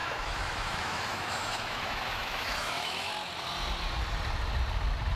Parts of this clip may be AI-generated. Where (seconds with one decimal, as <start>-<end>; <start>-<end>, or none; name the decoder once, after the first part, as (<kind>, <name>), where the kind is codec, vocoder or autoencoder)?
0.0-3.1 (autoencoder, DAC-VAE)